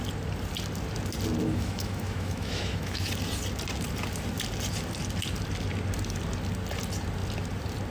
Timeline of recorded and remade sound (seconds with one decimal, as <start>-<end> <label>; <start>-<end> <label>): 0.0-1.4 recorded; 1.4-3.1 remade; 3.1-7.9 recorded